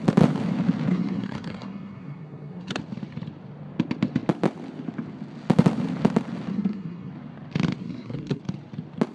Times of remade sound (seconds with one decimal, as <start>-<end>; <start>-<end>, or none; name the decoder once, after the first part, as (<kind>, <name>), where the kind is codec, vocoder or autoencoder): 0.9-2.8 (codec, SNAC); 6.5-7.1; 7.8-8.4